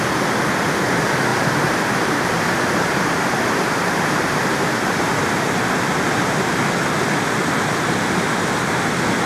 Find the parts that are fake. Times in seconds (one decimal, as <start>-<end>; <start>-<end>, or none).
1.3-5.6